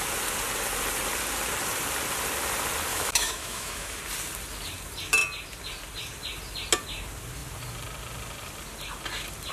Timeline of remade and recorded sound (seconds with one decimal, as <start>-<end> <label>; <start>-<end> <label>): 0.0-2.9 recorded; 2.9-4.0 remade; 4.0-9.5 recorded